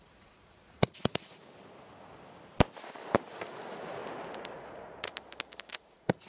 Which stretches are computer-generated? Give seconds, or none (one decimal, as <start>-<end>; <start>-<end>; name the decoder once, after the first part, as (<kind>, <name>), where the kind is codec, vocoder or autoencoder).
0.0-1.4 (vocoder, Vocos); 3.3-4.0; 4.5-5.1; 5.7-6.3